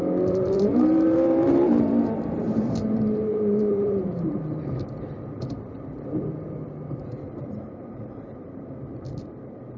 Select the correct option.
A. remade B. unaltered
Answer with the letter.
A